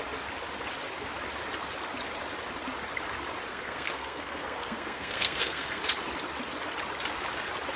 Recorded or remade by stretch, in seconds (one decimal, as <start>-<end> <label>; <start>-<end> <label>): 0.0-3.5 recorded; 3.5-5.8 remade; 5.8-7.8 recorded

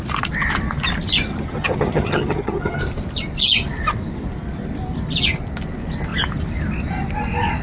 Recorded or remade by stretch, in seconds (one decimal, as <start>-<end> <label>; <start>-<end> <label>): 0.0-1.3 recorded; 1.3-2.8 remade; 2.8-7.6 recorded

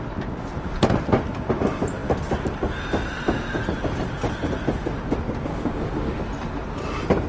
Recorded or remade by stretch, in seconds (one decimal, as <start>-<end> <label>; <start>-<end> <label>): 0.0-5.5 recorded; 5.5-6.2 remade; 6.2-7.3 recorded

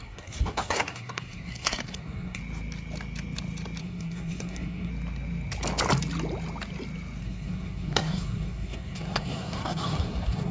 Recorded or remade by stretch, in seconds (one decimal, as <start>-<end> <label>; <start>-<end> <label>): 0.0-2.4 remade; 2.4-3.8 recorded; 3.8-4.9 remade; 4.9-7.2 recorded; 7.2-10.5 remade